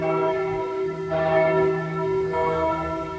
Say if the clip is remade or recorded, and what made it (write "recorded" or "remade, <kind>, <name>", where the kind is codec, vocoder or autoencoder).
remade, codec, SNAC